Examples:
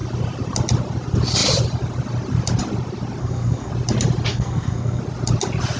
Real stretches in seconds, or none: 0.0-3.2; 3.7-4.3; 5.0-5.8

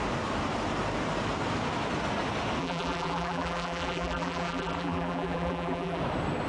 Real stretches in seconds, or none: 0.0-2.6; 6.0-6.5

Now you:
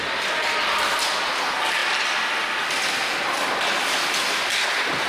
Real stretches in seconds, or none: 0.0-5.1

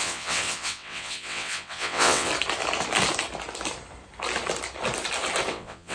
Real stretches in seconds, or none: 2.3-5.5

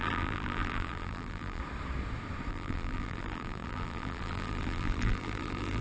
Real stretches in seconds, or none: 1.6-2.5

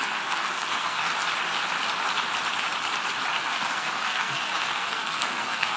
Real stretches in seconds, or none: 1.1-3.4

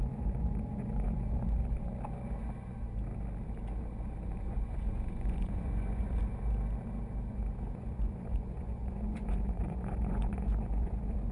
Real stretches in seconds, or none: 1.6-4.4; 6.2-7.3